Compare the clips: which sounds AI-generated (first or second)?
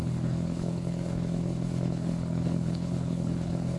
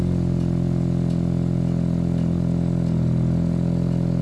first